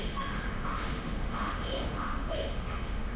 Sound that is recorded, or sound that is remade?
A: remade